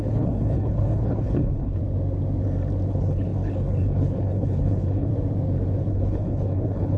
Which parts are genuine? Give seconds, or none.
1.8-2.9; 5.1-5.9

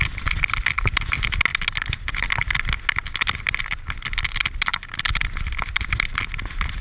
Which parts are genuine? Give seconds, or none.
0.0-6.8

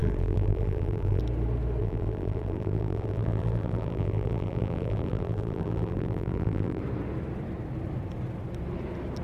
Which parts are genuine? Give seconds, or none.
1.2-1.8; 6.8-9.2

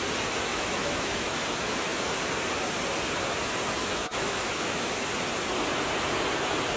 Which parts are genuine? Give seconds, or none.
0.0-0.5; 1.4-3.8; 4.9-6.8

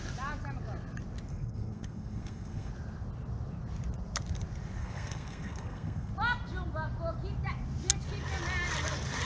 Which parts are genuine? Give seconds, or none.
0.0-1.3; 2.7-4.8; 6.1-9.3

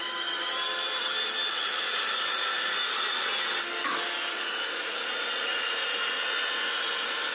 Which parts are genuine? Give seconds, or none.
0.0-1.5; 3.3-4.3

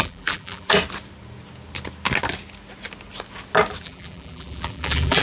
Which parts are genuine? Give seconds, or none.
0.7-3.8

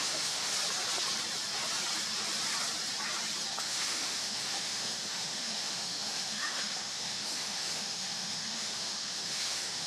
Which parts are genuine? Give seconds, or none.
0.5-3.6